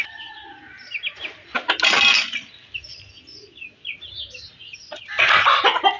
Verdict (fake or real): real